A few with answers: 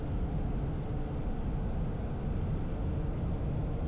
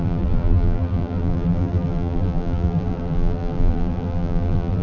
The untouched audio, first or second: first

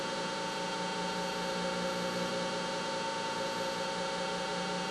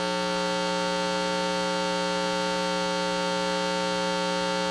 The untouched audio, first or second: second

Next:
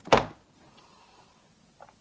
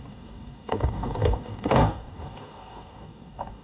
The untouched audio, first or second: first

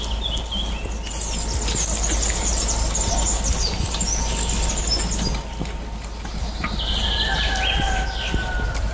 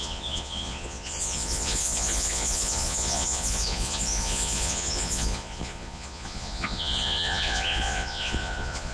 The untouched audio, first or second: first